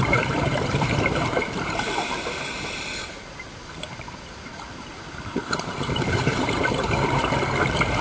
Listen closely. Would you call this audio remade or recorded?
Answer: remade